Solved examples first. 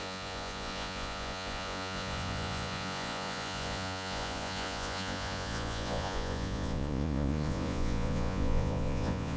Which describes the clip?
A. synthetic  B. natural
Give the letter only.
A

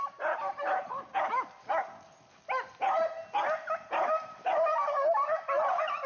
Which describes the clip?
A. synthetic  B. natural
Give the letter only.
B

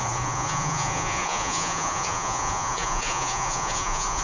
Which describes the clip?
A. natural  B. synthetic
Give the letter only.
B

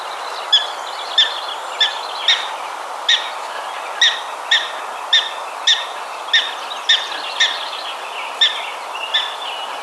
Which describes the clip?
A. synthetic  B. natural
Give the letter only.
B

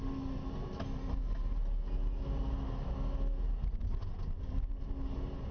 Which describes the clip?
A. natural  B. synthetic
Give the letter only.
A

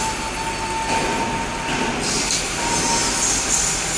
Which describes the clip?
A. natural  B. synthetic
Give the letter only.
A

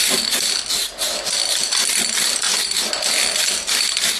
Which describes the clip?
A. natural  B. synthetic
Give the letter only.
A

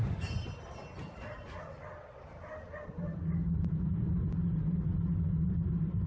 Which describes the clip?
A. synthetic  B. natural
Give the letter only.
B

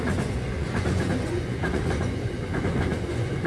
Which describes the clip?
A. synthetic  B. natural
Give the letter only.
A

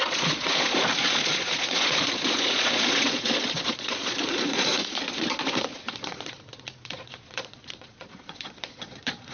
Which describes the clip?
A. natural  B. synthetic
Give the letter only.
B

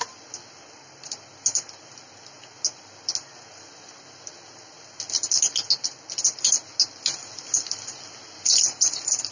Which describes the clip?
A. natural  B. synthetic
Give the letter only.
A